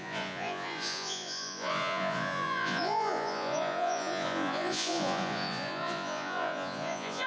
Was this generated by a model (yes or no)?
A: yes